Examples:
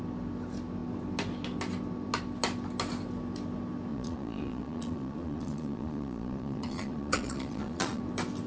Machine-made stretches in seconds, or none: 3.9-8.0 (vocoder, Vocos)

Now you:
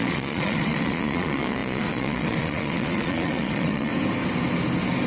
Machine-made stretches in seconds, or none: 0.0-3.9 (vocoder, Vocos)

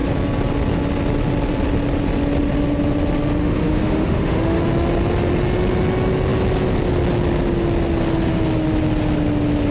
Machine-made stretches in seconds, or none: 3.4-4.6 (autoencoder, DAC-VAE)

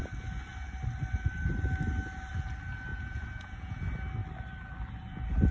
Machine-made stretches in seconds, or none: 2.9-3.8 (vocoder, Vocos)